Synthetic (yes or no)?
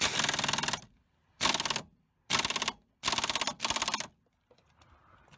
no